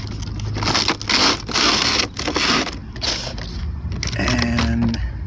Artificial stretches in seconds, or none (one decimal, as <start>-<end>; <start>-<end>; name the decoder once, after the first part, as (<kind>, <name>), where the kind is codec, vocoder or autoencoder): none